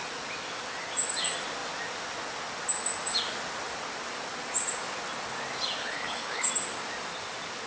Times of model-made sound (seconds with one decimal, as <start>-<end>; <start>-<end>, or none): 5.8-6.5